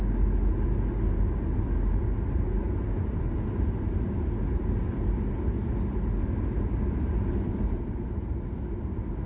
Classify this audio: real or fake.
real